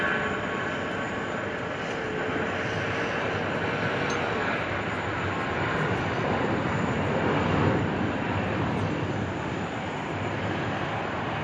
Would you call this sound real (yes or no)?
yes